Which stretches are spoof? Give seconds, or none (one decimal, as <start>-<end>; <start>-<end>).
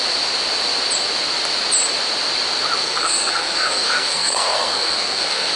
2.8-5.6